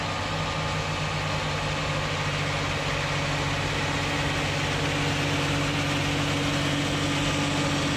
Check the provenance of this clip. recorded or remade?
recorded